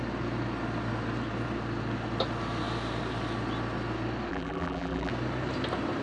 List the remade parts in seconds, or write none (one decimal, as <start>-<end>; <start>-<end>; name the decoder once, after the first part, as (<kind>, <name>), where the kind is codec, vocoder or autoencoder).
4.3-5.1 (vocoder, BigVGAN v2)